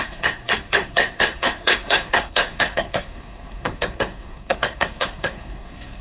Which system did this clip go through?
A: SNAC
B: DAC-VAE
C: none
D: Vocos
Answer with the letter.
A